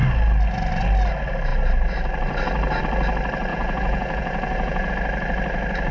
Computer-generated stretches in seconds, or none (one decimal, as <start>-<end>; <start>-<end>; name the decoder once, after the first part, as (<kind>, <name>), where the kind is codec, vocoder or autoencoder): 3.5-4.9 (vocoder, Vocos)